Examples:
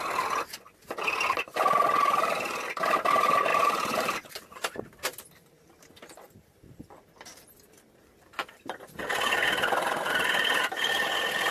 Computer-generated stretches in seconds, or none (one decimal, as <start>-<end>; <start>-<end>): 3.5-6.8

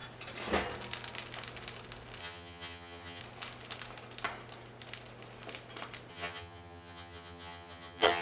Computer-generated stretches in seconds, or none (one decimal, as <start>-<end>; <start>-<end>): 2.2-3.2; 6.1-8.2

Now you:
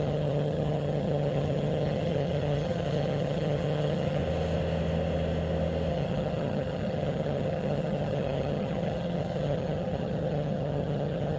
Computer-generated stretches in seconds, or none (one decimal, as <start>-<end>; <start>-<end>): 0.0-4.2; 5.9-11.4